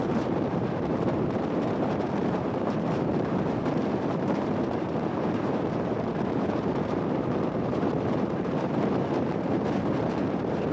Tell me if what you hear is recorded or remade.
remade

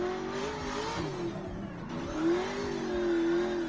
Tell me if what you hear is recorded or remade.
recorded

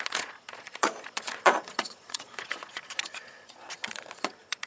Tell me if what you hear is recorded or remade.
remade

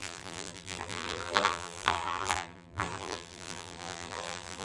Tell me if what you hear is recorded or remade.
remade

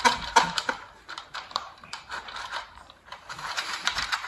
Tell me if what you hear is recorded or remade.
remade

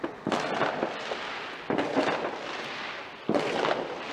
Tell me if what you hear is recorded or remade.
recorded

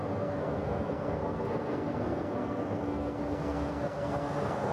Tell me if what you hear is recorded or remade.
remade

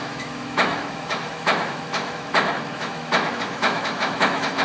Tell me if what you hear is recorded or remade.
remade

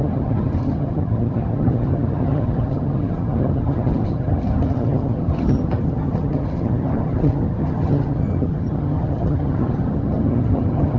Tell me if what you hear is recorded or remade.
remade